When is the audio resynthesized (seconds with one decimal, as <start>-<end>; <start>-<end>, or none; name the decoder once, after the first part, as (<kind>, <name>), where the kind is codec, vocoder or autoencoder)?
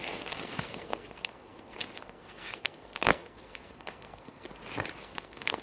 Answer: 0.0-4.5 (codec, SNAC); 5.0-5.6